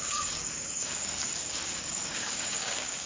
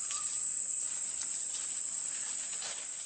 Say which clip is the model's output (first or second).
first